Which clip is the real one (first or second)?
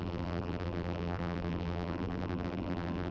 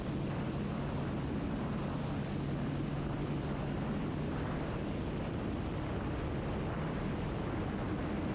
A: second